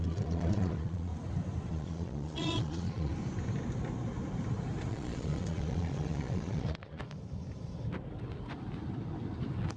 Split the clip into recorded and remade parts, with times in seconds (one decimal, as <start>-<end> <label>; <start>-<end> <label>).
0.0-1.1 remade; 1.1-1.7 recorded; 1.7-3.1 remade; 3.1-4.9 recorded; 4.9-7.0 remade; 7.0-9.8 recorded

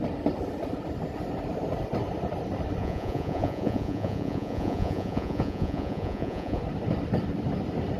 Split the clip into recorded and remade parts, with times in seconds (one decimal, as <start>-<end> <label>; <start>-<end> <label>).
0.0-2.8 recorded; 2.8-6.6 remade; 6.6-8.0 recorded

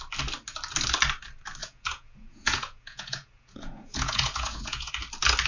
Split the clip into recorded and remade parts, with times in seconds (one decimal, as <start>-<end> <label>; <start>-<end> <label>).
0.0-1.6 recorded; 1.6-4.9 remade; 4.9-5.5 recorded

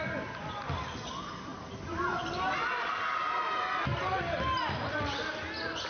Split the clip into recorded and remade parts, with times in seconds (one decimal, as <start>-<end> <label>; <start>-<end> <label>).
0.0-5.9 recorded

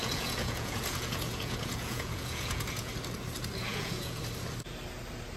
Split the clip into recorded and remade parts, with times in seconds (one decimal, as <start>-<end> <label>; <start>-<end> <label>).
0.0-2.9 remade; 2.9-3.7 recorded; 3.7-4.2 remade; 4.2-5.4 recorded

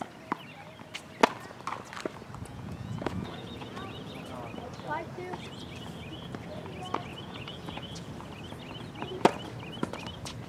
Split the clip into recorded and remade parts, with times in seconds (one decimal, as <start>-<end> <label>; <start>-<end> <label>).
0.0-2.5 recorded; 2.5-4.1 remade; 4.1-7.1 recorded; 7.1-8.1 remade; 8.1-10.5 recorded

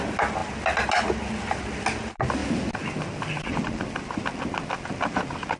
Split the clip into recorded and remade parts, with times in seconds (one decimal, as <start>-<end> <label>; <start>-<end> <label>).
0.0-5.6 recorded

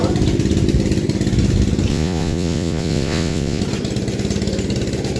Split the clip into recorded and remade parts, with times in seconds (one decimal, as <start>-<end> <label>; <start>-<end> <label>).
0.0-1.9 recorded; 1.9-3.6 remade; 3.6-5.2 recorded